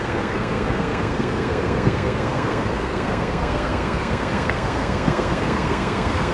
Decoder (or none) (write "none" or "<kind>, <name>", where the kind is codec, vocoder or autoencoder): codec, SNAC